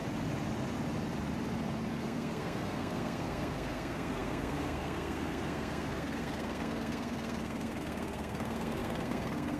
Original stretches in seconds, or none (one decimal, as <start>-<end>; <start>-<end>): 0.0-1.9